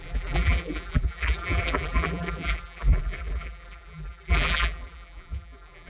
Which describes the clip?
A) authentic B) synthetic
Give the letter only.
B